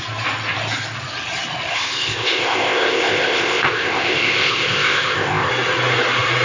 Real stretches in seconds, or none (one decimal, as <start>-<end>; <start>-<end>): 0.0-1.7; 5.5-6.4